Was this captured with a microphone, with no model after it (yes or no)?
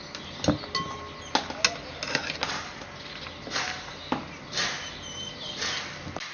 yes